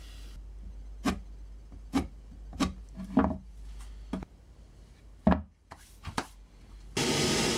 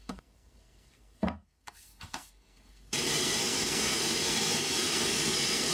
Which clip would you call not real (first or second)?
second